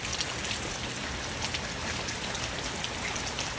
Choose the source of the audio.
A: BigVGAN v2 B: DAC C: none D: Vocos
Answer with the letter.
C